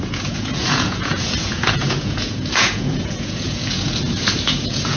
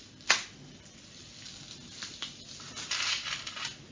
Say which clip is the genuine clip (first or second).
second